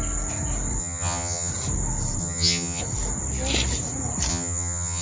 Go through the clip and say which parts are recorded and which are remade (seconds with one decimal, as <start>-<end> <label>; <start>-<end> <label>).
0.0-0.8 recorded; 0.8-1.5 remade; 1.5-2.2 recorded; 2.2-2.8 remade; 2.8-4.3 recorded; 4.3-5.0 remade